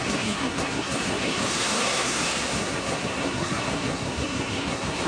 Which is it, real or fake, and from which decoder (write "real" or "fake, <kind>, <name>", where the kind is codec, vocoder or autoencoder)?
fake, codec, SNAC